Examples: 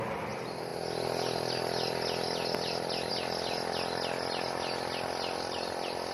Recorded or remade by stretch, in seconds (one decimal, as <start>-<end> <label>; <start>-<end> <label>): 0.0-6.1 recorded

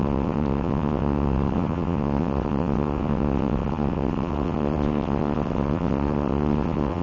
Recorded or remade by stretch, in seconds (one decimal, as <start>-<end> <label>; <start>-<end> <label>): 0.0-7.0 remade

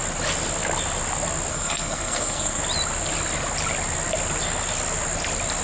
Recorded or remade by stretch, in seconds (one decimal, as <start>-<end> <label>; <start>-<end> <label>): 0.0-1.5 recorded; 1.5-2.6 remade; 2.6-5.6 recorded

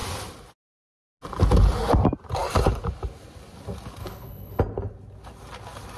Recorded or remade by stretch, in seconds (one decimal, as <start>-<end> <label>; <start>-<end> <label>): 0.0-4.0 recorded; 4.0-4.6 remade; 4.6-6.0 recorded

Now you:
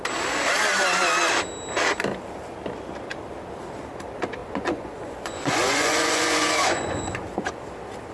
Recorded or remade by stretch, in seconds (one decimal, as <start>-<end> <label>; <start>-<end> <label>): 0.0-4.4 recorded; 4.4-7.5 remade; 7.5-8.1 recorded

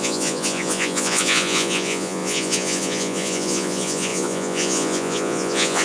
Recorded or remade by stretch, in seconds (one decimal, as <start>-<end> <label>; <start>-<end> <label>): 0.0-5.8 remade